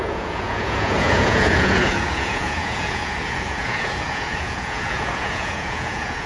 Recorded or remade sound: remade